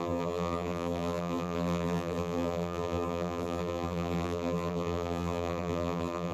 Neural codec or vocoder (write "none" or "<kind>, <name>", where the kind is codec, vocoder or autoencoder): vocoder, BigVGAN v2